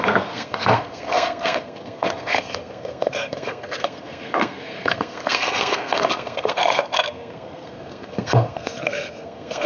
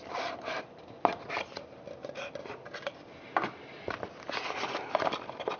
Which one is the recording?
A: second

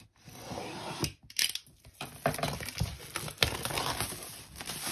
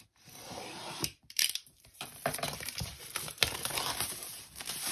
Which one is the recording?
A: first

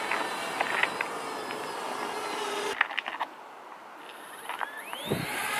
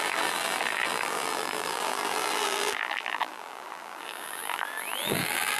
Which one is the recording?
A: first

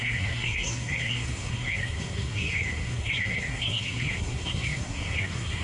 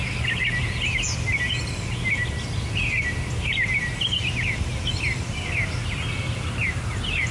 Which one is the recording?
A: second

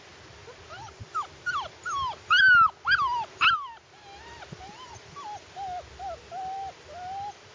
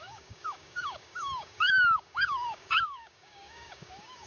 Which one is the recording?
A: first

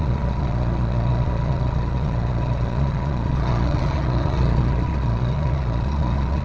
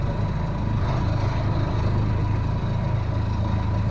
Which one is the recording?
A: second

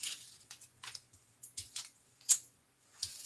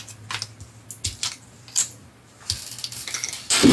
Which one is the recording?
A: second